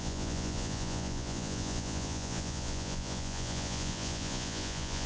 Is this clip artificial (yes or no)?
yes